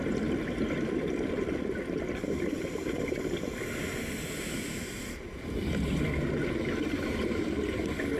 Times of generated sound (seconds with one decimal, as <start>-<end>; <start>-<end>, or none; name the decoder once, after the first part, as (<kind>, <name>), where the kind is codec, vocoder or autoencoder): none